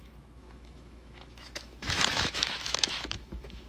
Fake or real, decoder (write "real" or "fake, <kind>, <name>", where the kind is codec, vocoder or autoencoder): fake, autoencoder, DAC-VAE